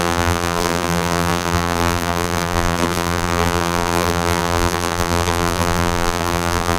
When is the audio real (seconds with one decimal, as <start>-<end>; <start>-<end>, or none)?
none

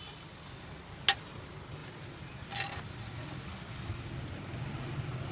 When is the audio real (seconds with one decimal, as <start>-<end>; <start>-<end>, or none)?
0.0-5.3

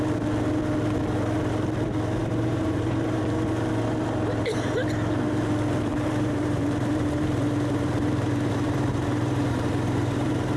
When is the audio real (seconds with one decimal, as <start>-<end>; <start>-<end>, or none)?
0.0-2.2; 3.2-5.9

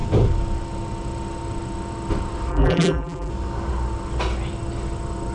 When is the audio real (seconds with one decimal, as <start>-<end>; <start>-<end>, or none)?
0.0-2.5; 3.3-5.3

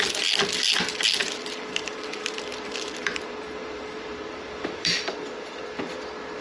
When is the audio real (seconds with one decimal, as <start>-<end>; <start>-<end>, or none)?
0.0-1.2; 5.0-6.4